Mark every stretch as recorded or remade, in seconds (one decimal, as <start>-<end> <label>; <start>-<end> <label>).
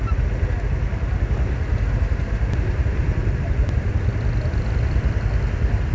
0.0-3.2 recorded; 3.2-3.9 remade; 3.9-5.9 recorded